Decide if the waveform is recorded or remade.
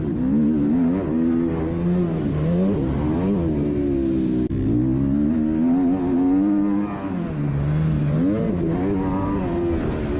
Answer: recorded